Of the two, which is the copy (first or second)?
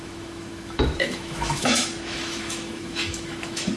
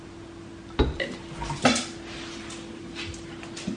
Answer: first